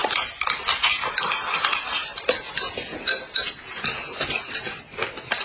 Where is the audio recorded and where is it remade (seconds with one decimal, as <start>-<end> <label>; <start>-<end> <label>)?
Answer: 0.0-1.2 recorded; 1.2-2.0 remade; 2.0-5.4 recorded